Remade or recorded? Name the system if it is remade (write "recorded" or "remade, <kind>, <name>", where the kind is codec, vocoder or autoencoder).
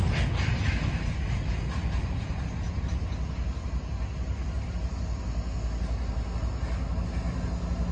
recorded